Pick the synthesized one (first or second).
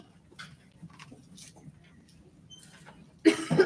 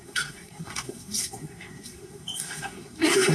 second